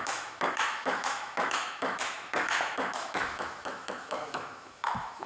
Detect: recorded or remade remade